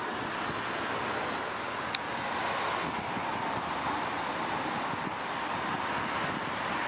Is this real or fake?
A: real